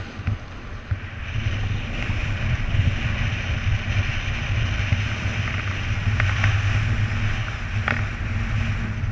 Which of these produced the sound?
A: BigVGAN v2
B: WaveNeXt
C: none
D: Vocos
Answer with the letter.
C